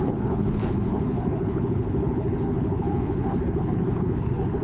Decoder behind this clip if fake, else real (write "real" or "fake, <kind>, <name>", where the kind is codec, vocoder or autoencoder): fake, codec, HILCodec